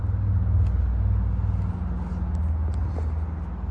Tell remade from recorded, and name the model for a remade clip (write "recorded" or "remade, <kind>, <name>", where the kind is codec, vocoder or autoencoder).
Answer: recorded